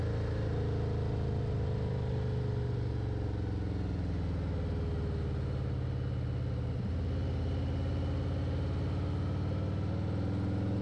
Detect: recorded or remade recorded